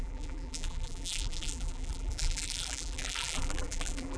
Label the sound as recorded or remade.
remade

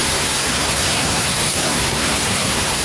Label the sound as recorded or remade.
remade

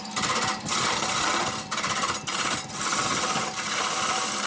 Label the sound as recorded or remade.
recorded